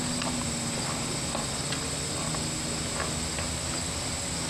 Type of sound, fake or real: real